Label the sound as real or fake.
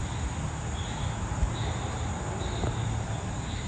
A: real